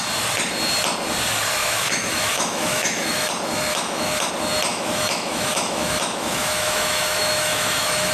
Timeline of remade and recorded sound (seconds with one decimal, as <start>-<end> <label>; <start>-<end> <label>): 0.0-1.6 recorded; 1.6-3.3 remade; 3.3-3.7 recorded; 3.7-4.3 remade; 4.3-4.7 recorded; 4.7-8.1 remade